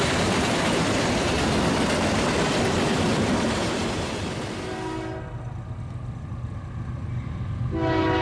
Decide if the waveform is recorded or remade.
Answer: recorded